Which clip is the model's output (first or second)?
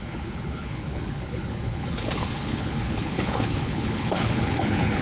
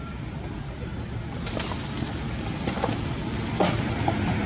first